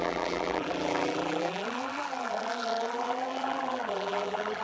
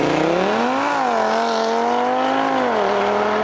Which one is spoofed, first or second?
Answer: first